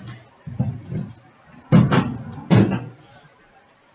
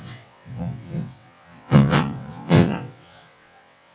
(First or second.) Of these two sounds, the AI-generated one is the second